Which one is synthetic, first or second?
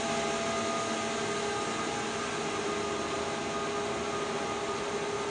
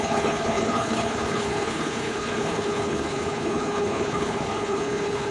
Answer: second